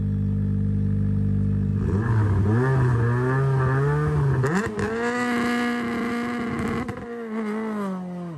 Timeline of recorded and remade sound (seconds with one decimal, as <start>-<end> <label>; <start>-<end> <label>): 0.0-8.4 recorded

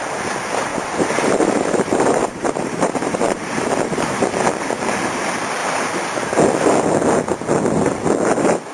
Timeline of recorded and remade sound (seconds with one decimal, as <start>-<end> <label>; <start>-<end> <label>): 0.0-0.7 recorded; 0.7-4.4 remade; 4.4-8.7 recorded

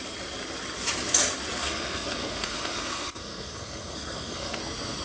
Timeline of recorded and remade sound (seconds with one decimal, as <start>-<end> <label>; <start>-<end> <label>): 0.0-1.6 recorded; 1.6-4.6 remade; 4.6-5.0 recorded

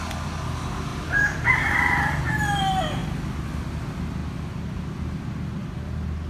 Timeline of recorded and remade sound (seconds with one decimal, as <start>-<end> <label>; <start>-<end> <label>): 0.0-0.9 recorded; 0.9-2.2 remade; 2.2-6.3 recorded